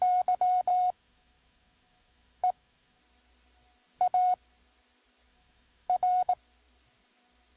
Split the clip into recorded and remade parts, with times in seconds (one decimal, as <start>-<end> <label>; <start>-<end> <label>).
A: 0.0-0.7 recorded; 0.7-3.0 remade; 3.0-5.3 recorded; 5.3-6.3 remade; 6.3-7.6 recorded